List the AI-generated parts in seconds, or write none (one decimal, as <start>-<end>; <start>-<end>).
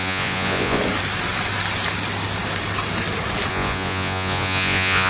0.0-0.8; 3.5-5.1